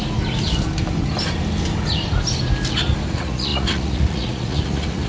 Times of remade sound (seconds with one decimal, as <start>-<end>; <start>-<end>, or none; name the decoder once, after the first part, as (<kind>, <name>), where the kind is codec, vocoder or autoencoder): 3.1-5.1 (vocoder, Vocos)